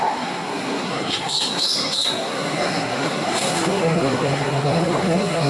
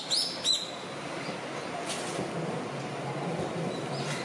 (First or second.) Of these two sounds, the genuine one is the second